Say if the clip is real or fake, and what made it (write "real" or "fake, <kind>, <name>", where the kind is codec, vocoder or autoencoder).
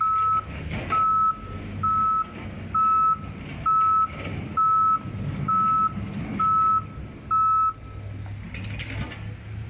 real